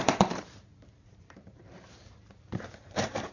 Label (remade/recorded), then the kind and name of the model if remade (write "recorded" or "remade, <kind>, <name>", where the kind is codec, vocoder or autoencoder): remade, vocoder, BigVGAN v2